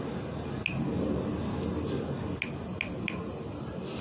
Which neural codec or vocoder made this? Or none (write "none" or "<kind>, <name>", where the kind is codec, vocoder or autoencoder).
none